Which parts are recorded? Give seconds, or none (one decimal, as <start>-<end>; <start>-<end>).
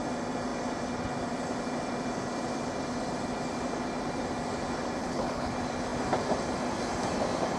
0.0-5.0; 5.5-7.6